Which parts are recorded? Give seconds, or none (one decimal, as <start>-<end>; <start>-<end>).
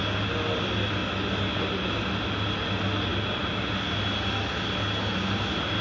0.0-5.8